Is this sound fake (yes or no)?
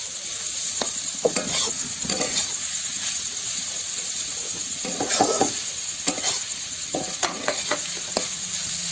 yes